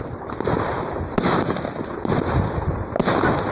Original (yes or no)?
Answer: yes